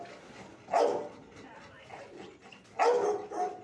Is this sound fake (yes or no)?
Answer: no